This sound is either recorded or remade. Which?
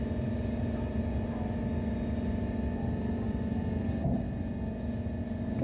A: recorded